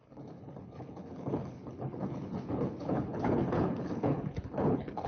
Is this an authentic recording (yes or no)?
no